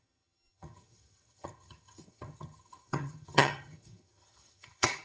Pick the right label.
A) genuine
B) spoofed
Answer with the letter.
B